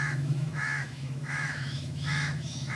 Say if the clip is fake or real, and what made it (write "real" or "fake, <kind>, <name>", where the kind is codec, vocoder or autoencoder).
fake, autoencoder, DAC-VAE